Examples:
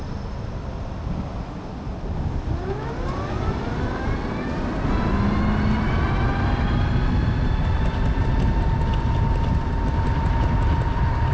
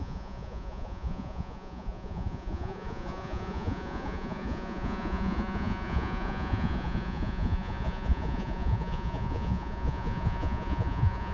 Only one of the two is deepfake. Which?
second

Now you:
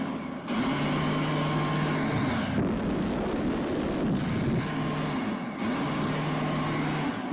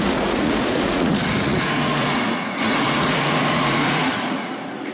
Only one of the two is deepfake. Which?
second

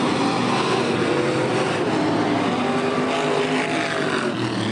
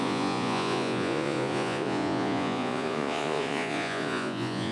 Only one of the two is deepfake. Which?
second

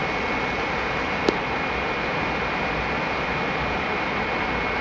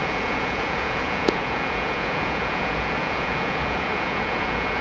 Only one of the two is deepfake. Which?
second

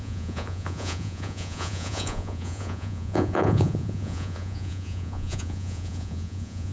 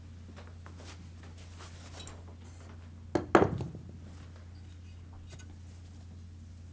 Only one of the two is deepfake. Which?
first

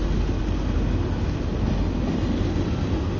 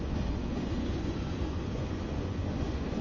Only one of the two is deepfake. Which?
second